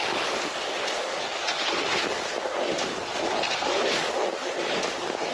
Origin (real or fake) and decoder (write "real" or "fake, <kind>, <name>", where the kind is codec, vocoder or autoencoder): real